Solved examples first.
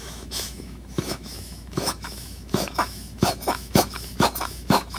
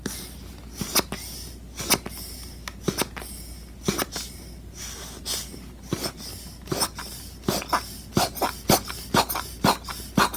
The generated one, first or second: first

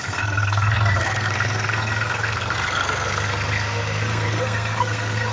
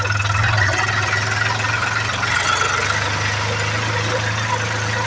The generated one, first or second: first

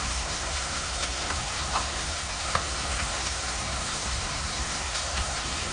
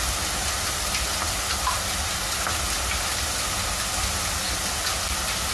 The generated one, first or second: first